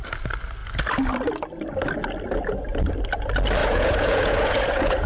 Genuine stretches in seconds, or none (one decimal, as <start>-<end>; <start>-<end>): 0.0-3.6